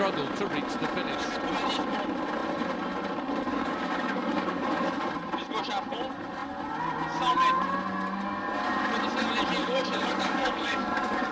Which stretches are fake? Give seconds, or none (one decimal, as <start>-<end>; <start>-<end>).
3.5-5.1; 9.6-11.3